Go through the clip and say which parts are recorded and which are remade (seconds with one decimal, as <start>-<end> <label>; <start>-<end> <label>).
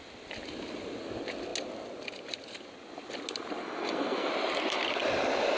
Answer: 0.0-3.6 recorded; 3.6-4.3 remade; 4.3-5.6 recorded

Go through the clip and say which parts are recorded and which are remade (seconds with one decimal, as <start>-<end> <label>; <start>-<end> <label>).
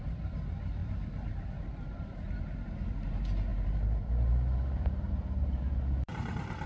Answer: 0.0-6.7 remade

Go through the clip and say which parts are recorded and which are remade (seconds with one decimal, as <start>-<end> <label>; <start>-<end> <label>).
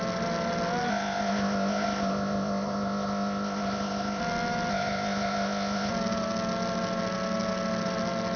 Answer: 0.0-0.9 recorded; 0.9-4.2 remade; 4.2-4.7 recorded; 4.7-5.9 remade; 5.9-8.4 recorded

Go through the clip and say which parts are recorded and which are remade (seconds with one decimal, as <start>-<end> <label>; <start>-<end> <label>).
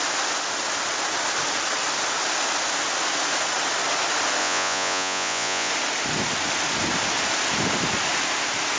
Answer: 0.0-4.4 recorded; 4.4-5.7 remade; 5.7-8.8 recorded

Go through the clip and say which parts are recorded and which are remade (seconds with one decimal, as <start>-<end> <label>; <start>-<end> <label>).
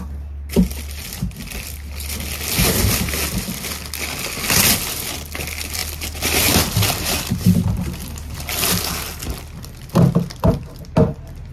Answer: 0.0-11.5 recorded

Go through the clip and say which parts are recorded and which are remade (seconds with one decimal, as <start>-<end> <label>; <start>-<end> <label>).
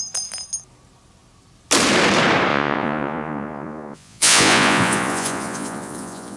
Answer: 0.0-2.5 recorded; 2.5-6.4 remade